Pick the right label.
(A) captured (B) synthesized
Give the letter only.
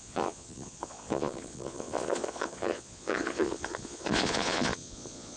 B